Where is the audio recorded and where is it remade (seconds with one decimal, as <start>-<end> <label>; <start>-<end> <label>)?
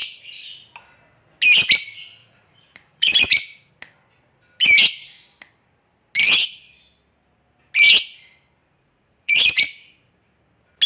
0.0-0.5 remade; 0.5-2.2 recorded; 2.2-3.7 remade; 3.7-8.6 recorded; 8.6-10.1 remade; 10.1-10.9 recorded